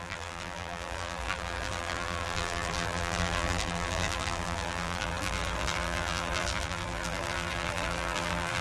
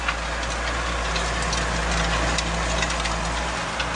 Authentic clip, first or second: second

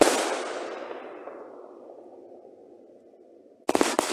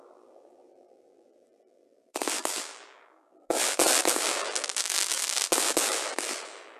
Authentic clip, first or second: first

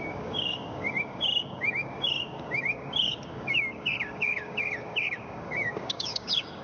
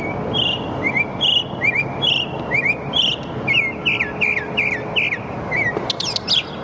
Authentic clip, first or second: second